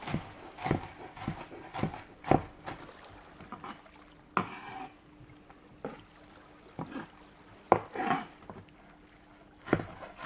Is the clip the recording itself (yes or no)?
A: yes